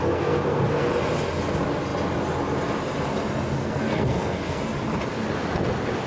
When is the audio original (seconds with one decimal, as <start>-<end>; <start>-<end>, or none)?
0.9-3.6; 4.6-6.1